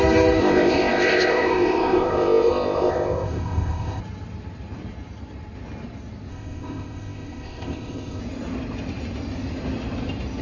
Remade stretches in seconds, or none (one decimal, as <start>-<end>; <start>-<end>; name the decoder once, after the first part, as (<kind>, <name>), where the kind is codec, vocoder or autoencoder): 0.4-4.0 (codec, ZipCodec); 6.3-8.2